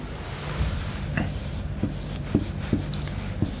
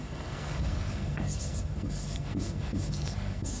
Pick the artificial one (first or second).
second